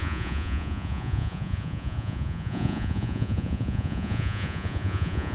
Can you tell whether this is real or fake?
fake